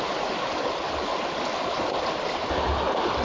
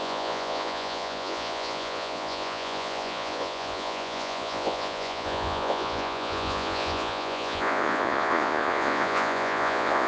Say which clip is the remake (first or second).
second